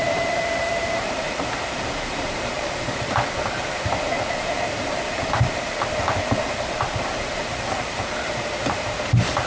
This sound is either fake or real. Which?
fake